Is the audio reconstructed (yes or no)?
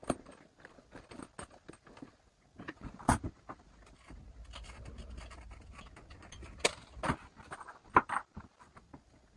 no